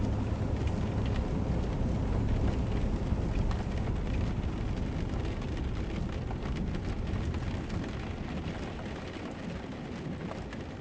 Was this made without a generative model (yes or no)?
yes